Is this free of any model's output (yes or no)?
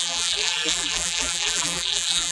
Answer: no